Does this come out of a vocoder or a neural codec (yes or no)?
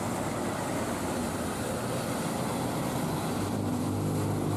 no